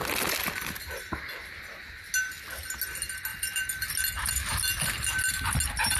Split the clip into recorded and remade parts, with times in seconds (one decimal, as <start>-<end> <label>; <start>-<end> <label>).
0.0-3.3 recorded; 3.3-3.9 remade; 3.9-6.0 recorded